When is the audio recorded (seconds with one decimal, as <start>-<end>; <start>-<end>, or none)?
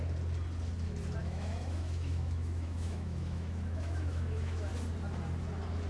0.0-1.2; 4.7-5.9